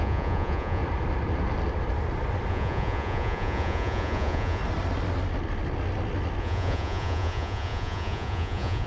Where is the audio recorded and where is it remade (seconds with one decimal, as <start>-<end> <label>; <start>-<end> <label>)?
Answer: 0.0-0.8 remade; 0.8-2.5 recorded; 2.5-4.6 remade; 4.6-6.4 recorded; 6.4-8.9 remade